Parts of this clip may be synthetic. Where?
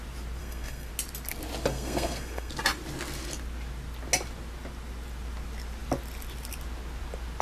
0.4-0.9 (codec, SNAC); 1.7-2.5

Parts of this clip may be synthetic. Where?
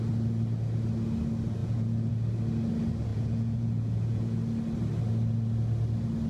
1.6-2.1 (vocoder, Vocos); 3.1-4.4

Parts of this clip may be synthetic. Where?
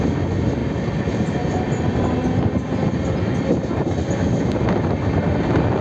none